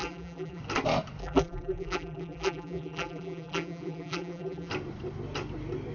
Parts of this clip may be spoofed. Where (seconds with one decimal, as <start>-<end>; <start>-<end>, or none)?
0.0-0.6; 1.2-4.7